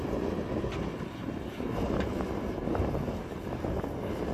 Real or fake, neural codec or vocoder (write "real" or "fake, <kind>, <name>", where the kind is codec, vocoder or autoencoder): real